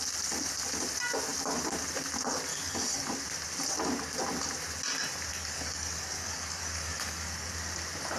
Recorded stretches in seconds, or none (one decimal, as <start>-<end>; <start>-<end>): 0.0-2.5; 3.1-5.3; 7.5-8.2